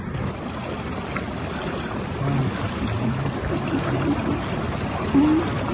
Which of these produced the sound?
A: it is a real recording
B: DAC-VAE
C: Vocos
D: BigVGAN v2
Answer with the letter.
A